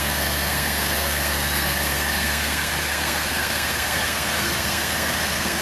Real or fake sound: fake